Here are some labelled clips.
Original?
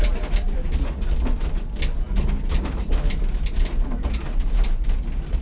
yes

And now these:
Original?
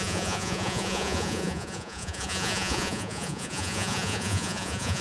no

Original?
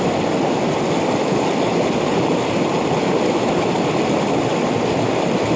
yes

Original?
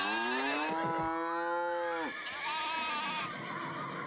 yes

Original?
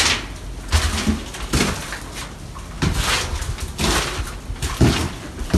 yes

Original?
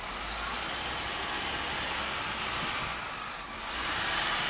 yes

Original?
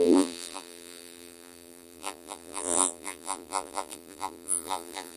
no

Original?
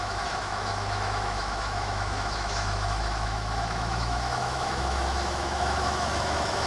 no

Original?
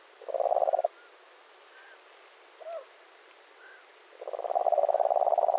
yes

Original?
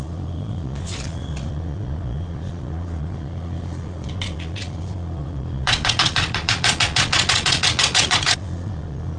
no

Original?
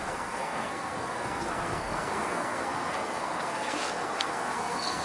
no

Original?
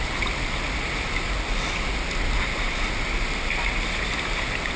yes